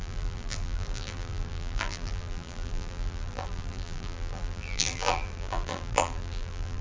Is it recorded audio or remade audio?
remade